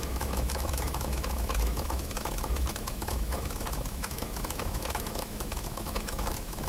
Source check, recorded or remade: remade